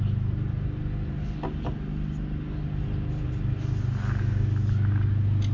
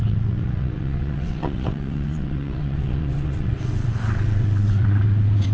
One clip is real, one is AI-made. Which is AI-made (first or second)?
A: second